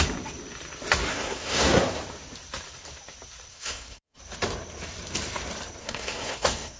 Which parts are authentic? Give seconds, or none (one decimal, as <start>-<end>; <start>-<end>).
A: 0.0-1.1; 2.0-3.5; 4.2-5.8

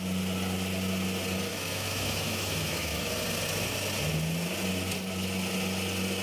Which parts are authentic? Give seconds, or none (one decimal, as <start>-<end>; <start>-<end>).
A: 0.0-1.5; 3.1-6.2

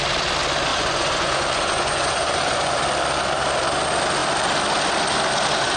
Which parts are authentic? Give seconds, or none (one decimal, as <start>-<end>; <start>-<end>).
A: 0.0-0.7; 2.8-5.8

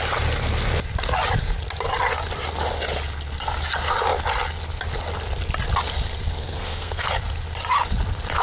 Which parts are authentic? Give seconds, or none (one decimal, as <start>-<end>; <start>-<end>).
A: 0.0-6.4; 7.1-8.4

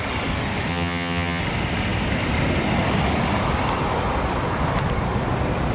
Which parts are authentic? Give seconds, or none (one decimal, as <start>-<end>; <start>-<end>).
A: 0.0-0.7; 1.4-5.7

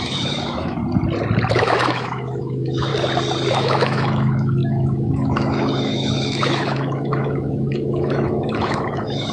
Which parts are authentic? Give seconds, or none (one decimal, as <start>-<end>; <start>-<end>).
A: 0.8-1.5; 2.9-3.5